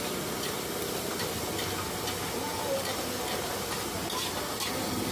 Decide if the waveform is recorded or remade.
recorded